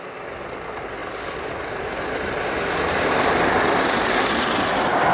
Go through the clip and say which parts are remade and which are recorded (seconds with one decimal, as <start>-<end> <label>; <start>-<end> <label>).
0.0-5.1 recorded

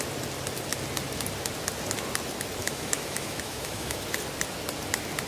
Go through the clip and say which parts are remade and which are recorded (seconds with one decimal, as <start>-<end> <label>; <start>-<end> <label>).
0.0-2.6 recorded; 2.6-4.0 remade; 4.0-5.3 recorded

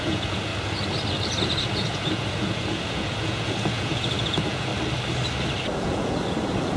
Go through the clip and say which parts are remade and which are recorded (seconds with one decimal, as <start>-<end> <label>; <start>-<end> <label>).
0.0-0.5 remade; 0.5-1.4 recorded; 1.4-4.7 remade; 4.7-5.8 recorded; 5.8-6.8 remade

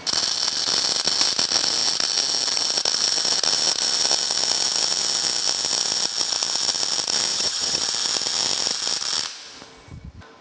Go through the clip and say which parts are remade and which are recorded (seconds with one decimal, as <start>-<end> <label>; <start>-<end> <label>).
0.0-7.3 recorded; 7.3-7.8 remade; 7.8-10.4 recorded

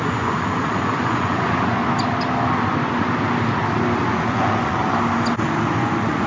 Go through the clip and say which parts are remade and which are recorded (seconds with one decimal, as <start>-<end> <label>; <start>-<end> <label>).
0.0-1.8 remade; 1.8-4.1 recorded; 4.1-4.8 remade; 4.8-5.7 recorded; 5.7-6.3 remade

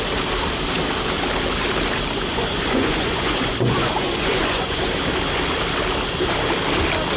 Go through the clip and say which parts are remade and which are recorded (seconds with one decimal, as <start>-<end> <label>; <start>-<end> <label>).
0.0-2.3 recorded; 2.3-4.9 remade; 4.9-7.2 recorded